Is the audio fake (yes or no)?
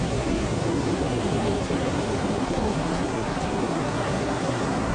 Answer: yes